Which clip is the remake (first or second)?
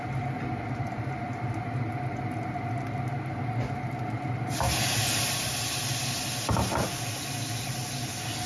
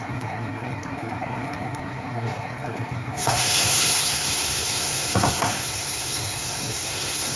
second